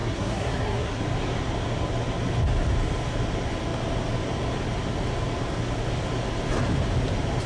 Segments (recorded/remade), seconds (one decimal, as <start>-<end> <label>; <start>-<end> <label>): 0.0-1.0 remade; 1.0-7.5 recorded